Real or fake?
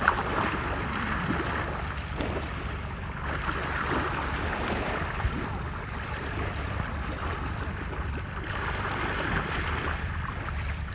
fake